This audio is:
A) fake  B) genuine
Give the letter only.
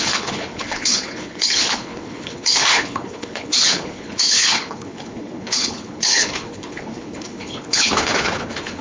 A